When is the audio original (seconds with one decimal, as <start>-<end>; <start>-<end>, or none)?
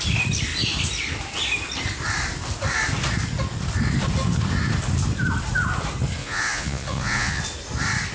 0.0-6.2; 7.4-8.1